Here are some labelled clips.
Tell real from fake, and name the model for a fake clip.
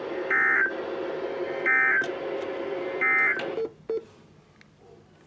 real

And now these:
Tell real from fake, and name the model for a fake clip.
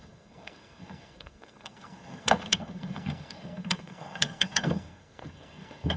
fake, codec, SNAC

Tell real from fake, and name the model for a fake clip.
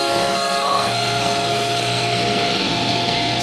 fake, codec, SNAC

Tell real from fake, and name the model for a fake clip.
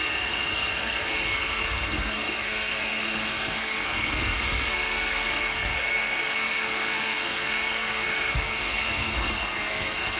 fake, codec, SNAC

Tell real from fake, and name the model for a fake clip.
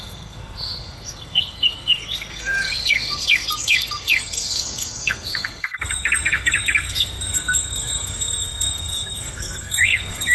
fake, codec, SNAC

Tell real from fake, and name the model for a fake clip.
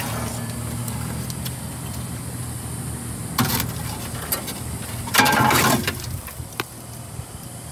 real